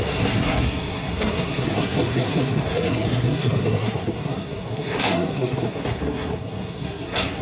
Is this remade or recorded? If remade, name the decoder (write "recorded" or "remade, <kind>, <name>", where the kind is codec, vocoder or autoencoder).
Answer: remade, codec, SNAC